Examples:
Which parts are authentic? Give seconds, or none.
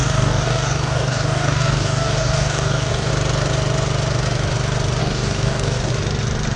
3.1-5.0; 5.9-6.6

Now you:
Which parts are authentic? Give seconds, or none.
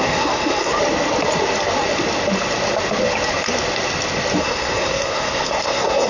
0.7-4.4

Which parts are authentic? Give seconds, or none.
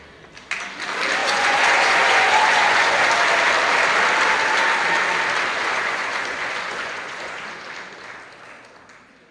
0.0-1.2; 3.1-5.5; 7.6-9.3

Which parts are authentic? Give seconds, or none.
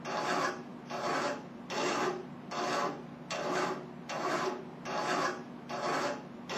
0.0-6.6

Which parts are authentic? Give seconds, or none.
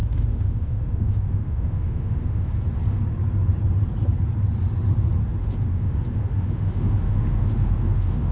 2.5-5.4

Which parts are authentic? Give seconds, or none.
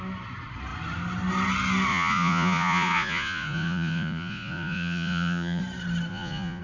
0.0-1.9; 5.6-6.1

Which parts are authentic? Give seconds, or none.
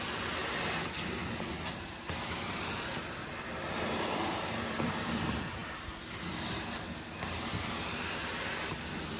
0.0-9.2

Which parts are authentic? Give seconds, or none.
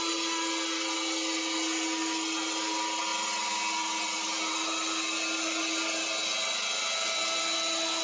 0.0-8.0